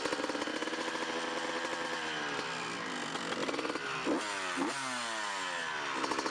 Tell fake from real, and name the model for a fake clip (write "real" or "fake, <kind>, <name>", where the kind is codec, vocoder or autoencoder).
real